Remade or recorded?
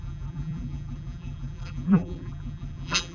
remade